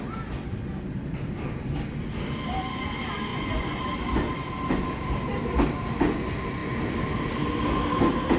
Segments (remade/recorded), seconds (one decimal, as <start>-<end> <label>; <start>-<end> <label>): 0.0-3.3 recorded; 3.3-3.8 remade; 3.8-8.4 recorded